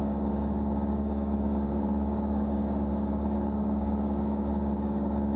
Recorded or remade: remade